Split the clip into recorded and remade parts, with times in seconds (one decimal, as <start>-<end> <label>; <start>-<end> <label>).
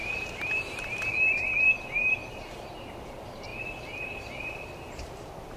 0.0-3.5 remade; 3.5-5.0 recorded; 5.0-5.6 remade